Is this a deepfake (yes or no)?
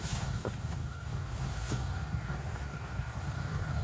yes